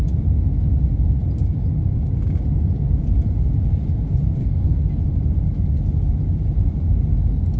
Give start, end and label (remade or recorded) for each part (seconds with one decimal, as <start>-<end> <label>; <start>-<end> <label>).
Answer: 0.0-4.4 recorded; 4.4-4.9 remade; 4.9-7.6 recorded